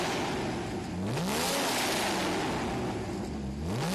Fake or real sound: real